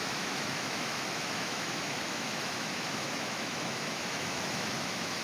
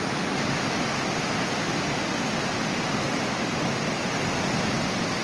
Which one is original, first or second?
second